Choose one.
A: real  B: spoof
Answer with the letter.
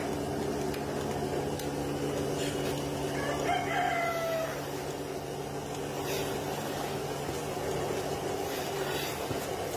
A